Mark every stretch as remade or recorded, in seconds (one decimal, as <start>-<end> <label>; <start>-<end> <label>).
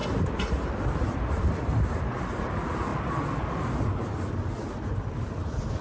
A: 0.0-2.0 remade; 2.0-5.8 recorded